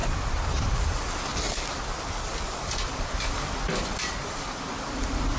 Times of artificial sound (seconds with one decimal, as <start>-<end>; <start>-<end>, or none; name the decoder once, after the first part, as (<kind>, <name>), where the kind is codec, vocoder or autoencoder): none